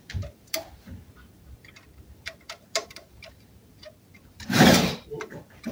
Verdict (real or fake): fake